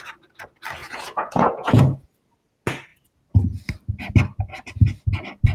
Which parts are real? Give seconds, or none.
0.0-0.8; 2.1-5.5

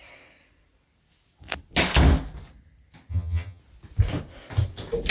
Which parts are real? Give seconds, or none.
0.0-3.1; 3.6-5.1

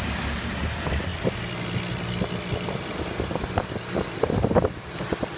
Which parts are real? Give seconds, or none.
0.0-5.4

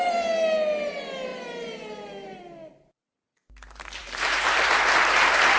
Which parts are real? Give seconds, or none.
0.0-1.3; 2.4-4.0; 4.7-5.6

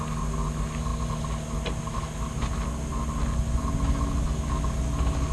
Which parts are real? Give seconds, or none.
0.0-5.3

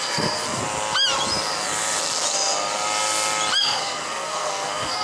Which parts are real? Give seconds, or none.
0.6-3.6

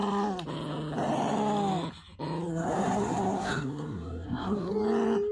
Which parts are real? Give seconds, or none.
0.0-2.5; 4.7-5.3

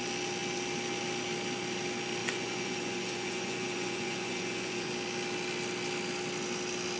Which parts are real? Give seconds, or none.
0.0-2.2; 4.9-7.0